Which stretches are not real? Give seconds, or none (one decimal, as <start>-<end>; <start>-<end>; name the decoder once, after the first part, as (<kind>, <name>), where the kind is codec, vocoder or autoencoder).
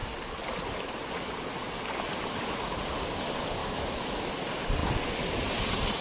3.6-4.3 (autoencoder, DAC-VAE)